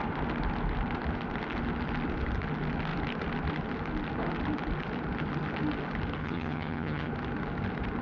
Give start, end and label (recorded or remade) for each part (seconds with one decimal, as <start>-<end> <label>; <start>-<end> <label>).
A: 0.0-6.2 recorded; 6.2-7.1 remade; 7.1-8.0 recorded